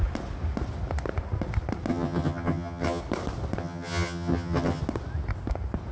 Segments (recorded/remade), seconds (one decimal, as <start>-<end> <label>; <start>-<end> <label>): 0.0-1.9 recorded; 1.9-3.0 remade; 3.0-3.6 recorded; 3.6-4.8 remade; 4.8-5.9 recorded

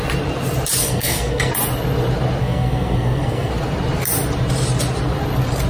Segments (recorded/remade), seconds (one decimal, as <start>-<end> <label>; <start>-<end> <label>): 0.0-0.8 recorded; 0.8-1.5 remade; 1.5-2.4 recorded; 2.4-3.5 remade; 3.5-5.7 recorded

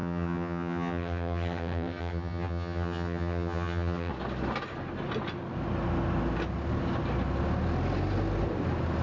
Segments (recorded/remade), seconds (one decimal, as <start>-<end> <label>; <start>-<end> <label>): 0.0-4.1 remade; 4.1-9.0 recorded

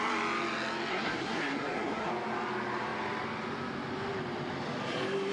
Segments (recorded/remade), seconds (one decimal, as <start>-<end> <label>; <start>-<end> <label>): 0.0-0.9 recorded; 0.9-2.1 remade; 2.1-5.3 recorded

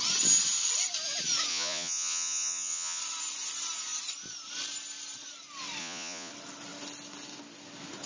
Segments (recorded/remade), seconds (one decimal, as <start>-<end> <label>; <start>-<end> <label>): 0.0-1.5 recorded; 1.5-3.0 remade; 3.0-5.8 recorded; 5.8-6.3 remade; 6.3-8.1 recorded